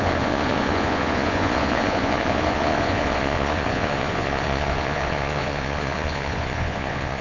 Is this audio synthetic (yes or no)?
yes